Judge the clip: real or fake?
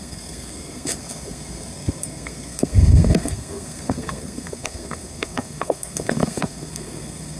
fake